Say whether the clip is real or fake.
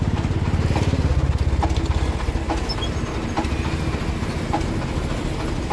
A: real